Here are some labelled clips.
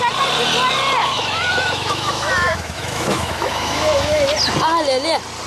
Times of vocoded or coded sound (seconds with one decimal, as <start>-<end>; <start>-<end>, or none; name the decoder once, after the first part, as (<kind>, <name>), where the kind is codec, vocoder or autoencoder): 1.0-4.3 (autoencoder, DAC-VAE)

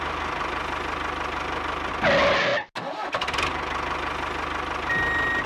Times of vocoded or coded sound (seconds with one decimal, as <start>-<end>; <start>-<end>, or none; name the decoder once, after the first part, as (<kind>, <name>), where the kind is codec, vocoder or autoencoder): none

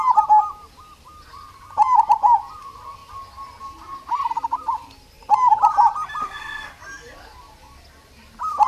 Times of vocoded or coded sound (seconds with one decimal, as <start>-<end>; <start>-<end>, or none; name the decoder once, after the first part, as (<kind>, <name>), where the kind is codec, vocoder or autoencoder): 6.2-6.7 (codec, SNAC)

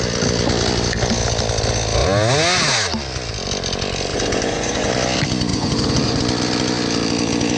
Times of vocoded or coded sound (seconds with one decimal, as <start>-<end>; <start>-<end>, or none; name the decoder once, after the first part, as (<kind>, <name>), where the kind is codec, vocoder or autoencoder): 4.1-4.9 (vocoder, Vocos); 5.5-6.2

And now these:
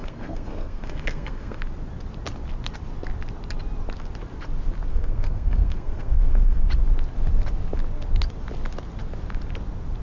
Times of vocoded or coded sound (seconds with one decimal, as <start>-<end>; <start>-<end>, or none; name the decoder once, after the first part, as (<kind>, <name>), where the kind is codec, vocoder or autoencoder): 0.0-1.6 (codec, SNAC); 4.9-6.7